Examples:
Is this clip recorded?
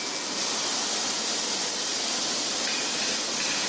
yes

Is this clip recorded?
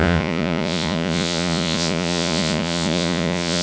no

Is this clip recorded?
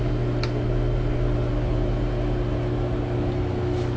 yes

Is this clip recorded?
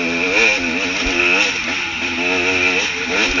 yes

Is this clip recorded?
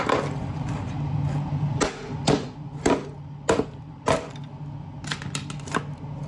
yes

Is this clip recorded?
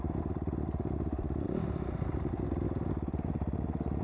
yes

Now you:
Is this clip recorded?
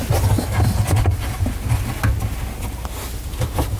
yes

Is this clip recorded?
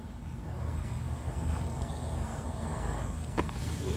no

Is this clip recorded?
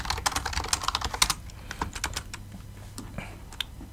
yes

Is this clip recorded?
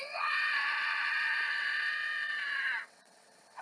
no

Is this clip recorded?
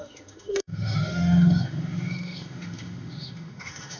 no